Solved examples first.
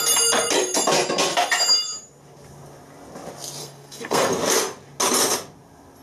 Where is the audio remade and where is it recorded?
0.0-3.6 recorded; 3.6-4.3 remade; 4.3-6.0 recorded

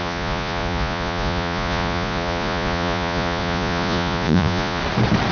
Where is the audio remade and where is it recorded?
0.0-4.8 remade; 4.8-5.3 recorded

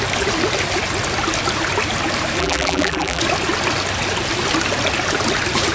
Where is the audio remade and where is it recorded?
0.0-2.4 recorded; 2.4-3.2 remade; 3.2-5.7 recorded

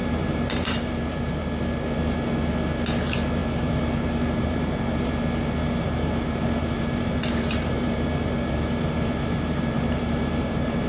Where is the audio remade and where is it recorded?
0.0-1.4 remade; 1.4-3.4 recorded; 3.4-5.1 remade; 5.1-5.6 recorded; 5.6-10.9 remade